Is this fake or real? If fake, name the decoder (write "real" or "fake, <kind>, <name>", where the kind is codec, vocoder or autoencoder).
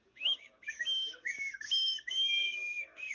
fake, codec, DAC